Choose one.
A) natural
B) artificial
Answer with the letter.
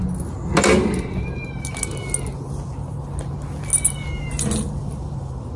A